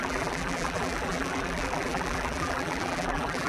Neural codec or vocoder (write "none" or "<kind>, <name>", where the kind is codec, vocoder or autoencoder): vocoder, BigVGAN v2